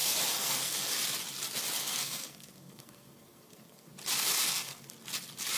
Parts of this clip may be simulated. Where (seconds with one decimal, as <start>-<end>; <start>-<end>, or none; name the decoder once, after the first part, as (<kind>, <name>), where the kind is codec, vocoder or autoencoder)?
0.0-0.9 (codec, SNAC); 1.8-3.9; 4.4-4.9